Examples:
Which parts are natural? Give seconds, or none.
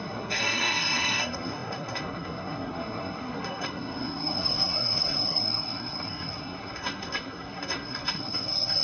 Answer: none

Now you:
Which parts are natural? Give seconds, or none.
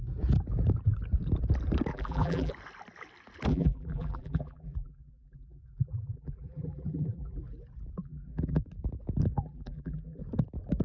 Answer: 0.0-1.9; 2.5-3.5; 7.4-8.0; 8.6-9.3; 10.2-10.8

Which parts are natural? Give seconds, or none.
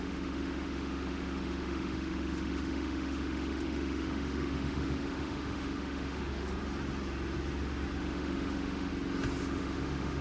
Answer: 6.6-8.0; 8.9-9.4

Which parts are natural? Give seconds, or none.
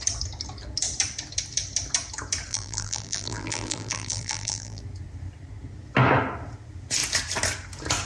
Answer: 0.0-2.5; 4.8-8.1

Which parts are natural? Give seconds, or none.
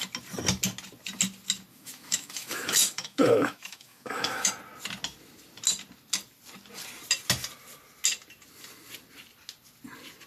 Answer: 0.0-1.7; 4.5-10.3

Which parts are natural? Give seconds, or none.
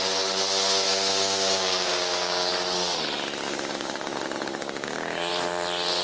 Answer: 0.0-1.1; 2.5-3.5; 5.3-6.0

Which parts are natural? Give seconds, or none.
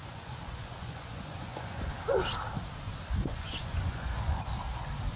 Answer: 1.9-3.2; 4.5-5.2